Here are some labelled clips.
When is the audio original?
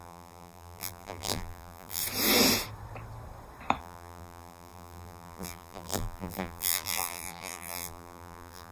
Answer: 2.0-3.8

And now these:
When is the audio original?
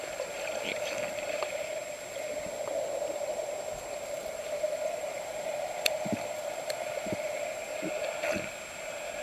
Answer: 0.0-4.2; 7.4-9.2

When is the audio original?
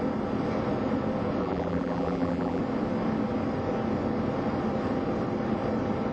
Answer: 0.0-1.4; 2.6-6.1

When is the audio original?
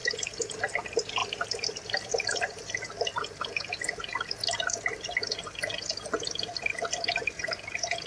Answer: 0.5-1.2; 2.7-8.1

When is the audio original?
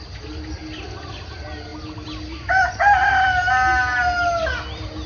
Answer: 0.0-5.1